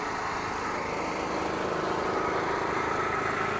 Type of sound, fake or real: real